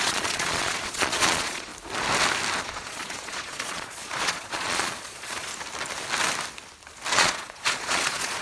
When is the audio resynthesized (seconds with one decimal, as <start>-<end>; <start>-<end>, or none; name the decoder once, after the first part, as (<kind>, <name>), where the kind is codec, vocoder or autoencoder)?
0.0-1.7 (vocoder, Vocos); 2.6-5.5; 7.1-8.4